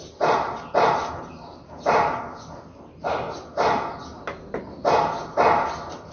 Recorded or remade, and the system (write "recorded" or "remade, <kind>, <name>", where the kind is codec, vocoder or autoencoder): recorded